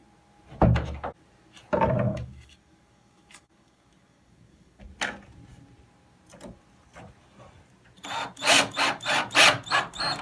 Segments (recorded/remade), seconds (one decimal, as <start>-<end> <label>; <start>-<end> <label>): 0.0-2.1 recorded; 2.1-4.9 remade; 4.9-10.2 recorded